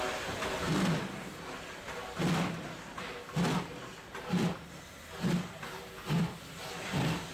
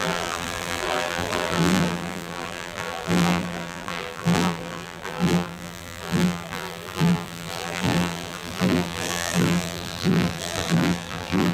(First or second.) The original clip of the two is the first